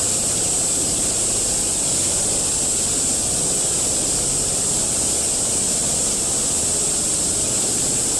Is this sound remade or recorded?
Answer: recorded